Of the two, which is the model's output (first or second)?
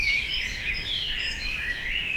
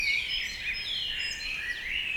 first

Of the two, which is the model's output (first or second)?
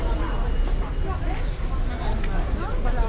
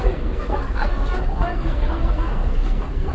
second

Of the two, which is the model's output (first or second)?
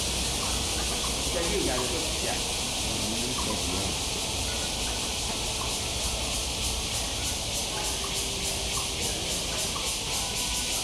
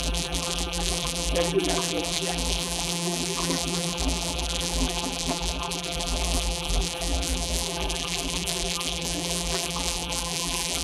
second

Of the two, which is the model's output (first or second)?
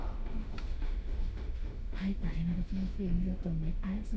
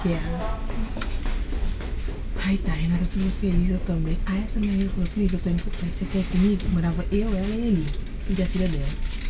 first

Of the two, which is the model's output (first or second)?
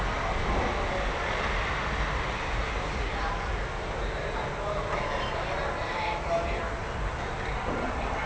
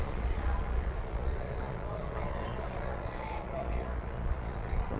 second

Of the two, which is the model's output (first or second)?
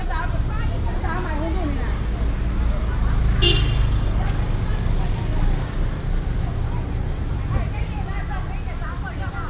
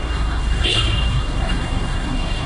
second